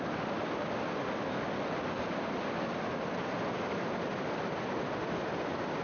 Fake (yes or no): no